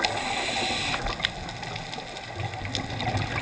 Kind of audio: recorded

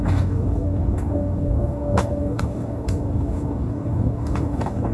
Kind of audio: remade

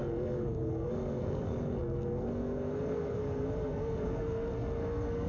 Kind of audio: remade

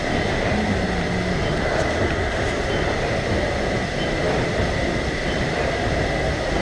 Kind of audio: recorded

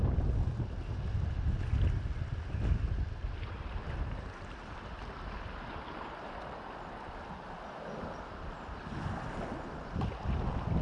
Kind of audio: recorded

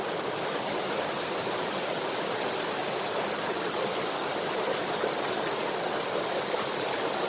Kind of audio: recorded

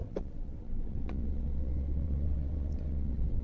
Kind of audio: remade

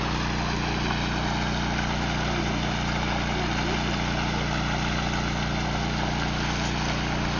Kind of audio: recorded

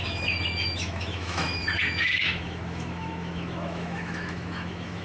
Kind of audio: remade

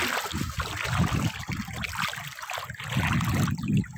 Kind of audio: recorded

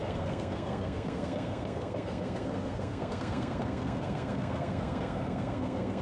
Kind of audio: remade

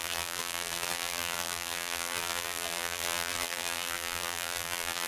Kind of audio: remade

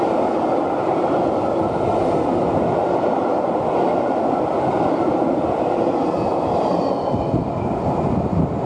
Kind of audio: recorded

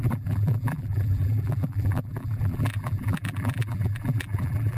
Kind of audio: remade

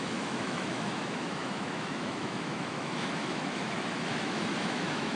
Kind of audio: remade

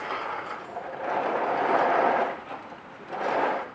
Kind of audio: recorded